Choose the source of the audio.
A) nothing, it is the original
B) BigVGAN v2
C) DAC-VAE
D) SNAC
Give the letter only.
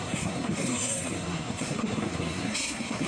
D